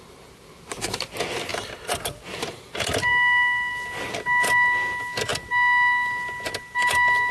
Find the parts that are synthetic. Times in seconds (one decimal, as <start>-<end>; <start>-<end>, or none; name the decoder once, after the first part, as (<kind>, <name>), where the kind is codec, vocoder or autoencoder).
none

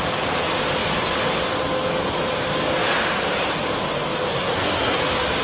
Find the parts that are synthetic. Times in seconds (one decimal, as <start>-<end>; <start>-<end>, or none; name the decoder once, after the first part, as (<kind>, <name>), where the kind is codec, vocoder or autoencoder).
4.3-5.0 (codec, SNAC)

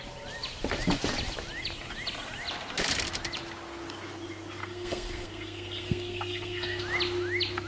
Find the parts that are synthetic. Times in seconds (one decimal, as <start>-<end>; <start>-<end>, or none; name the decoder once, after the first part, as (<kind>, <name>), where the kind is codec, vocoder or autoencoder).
4.6-6.8 (codec, SNAC)

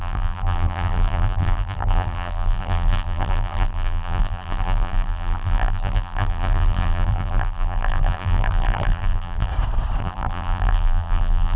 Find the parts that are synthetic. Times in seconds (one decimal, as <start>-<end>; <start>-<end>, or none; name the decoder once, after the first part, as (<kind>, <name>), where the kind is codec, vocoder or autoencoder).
0.0-9.5 (vocoder, BigVGAN v2); 10.0-11.6

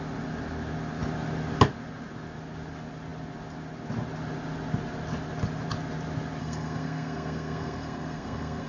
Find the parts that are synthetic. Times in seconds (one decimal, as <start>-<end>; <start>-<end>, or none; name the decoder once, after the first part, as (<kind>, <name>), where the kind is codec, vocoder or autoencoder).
6.4-8.7 (codec, SNAC)

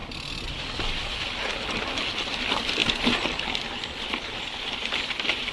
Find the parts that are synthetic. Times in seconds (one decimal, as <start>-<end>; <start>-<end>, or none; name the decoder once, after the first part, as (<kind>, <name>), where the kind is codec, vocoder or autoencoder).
2.8-5.0 (vocoder, BigVGAN v2)